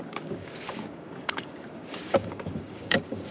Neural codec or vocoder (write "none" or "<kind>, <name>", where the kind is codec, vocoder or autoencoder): codec, DAC